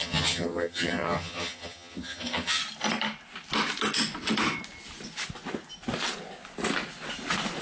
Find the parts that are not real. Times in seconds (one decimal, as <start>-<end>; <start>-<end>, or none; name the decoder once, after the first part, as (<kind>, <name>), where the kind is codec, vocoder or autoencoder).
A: 0.0-2.6 (vocoder, HiFi-GAN)